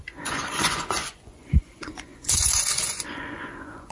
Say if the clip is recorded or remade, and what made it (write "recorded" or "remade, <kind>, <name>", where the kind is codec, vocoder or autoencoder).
remade, vocoder, Vocos